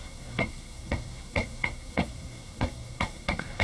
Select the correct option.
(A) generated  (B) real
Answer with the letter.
A